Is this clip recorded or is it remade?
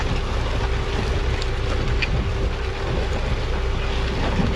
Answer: recorded